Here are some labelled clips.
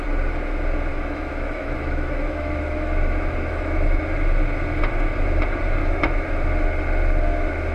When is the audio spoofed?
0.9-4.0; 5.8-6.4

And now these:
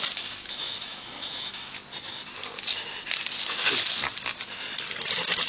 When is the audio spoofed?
0.0-1.8; 5.1-5.5

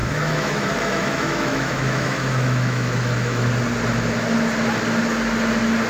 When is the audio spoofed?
0.0-3.5